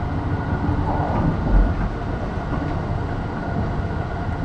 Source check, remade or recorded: recorded